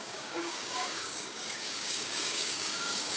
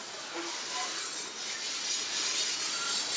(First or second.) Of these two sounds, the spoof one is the first